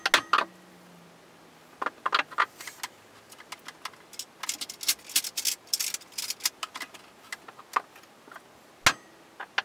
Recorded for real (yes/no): yes